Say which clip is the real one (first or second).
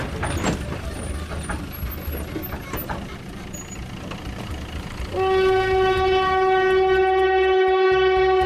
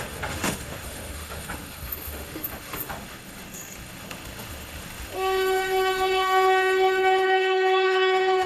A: first